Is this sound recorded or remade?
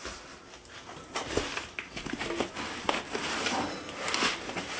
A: recorded